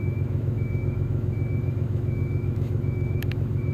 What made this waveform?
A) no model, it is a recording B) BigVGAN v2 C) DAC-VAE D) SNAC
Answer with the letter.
C